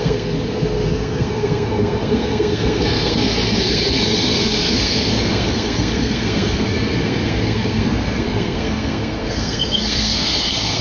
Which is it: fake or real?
fake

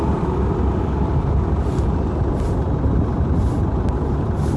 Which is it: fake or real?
real